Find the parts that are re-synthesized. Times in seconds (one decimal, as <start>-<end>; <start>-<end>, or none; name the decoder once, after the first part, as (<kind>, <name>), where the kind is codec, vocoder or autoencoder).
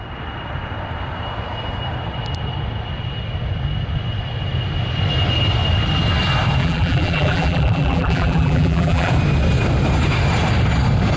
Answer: 6.6-9.1 (vocoder, BigVGAN v2)